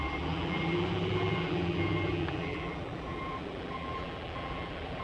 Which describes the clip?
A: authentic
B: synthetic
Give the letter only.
B